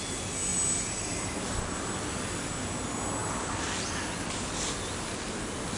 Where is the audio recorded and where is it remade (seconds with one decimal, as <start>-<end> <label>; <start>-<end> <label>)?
0.0-0.5 recorded; 0.5-1.8 remade; 1.8-3.2 recorded; 3.2-3.7 remade; 3.7-5.8 recorded